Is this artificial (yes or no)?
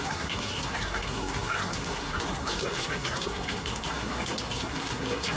yes